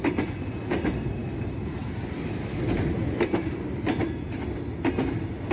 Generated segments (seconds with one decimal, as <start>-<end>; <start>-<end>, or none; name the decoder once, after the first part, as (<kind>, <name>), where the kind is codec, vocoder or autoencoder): none

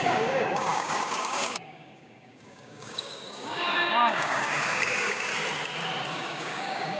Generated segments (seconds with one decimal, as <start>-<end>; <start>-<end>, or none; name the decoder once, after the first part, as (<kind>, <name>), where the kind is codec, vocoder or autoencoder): 0.0-5.3 (codec, DAC); 6.1-7.0

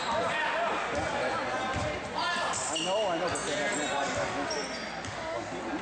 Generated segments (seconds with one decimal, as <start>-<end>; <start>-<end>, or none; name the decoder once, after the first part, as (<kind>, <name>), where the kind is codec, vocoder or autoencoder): none

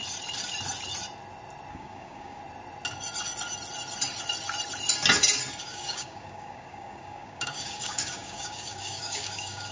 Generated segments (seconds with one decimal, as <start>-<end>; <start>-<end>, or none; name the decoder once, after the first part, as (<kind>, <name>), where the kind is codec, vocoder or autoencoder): 1.7-2.4 (codec, DAC); 5.6-9.7

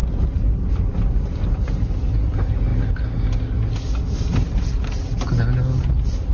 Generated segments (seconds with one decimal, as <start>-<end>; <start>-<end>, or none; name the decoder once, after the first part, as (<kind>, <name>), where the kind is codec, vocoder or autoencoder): none

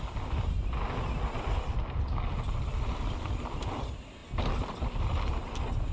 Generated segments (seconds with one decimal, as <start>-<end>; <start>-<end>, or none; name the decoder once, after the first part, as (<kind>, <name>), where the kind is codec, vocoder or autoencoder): none

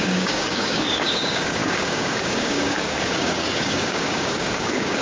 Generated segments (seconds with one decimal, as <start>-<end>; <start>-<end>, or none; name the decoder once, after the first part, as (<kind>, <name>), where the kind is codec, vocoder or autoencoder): 0.0-5.0 (codec, DAC)